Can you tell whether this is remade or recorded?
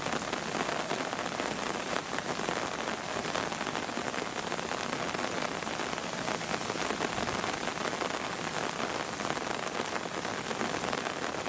recorded